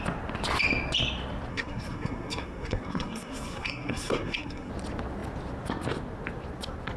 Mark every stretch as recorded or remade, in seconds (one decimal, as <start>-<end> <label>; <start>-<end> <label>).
0.0-1.5 recorded; 1.5-4.7 remade; 4.7-7.0 recorded